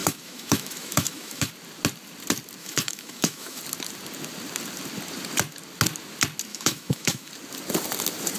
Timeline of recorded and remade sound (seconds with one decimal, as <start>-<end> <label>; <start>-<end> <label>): 0.0-1.5 remade; 1.5-2.6 recorded; 2.6-3.6 remade; 3.6-6.5 recorded; 6.5-7.3 remade; 7.3-8.4 recorded